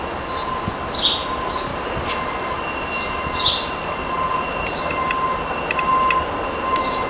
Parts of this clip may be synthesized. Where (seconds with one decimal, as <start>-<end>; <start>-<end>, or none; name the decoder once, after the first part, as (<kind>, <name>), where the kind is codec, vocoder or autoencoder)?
none